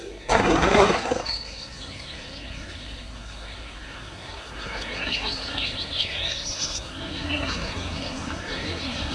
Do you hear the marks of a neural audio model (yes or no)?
yes